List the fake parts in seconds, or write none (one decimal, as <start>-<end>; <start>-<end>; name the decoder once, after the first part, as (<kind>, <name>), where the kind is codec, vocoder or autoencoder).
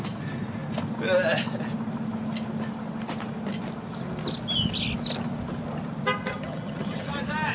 6.3-7.1 (vocoder, HiFi-GAN)